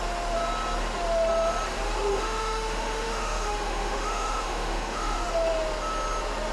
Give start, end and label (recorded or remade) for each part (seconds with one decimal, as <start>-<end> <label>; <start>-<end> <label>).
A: 0.0-2.1 recorded; 2.1-5.3 remade; 5.3-6.5 recorded